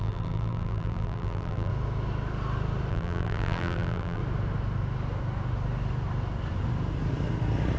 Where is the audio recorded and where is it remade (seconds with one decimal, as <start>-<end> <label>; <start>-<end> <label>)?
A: 0.0-1.7 remade; 1.7-2.9 recorded; 2.9-4.2 remade; 4.2-7.8 recorded